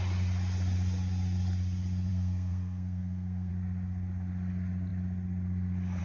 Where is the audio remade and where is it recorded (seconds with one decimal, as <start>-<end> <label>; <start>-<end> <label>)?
0.0-2.1 recorded; 2.1-3.5 remade; 3.5-6.0 recorded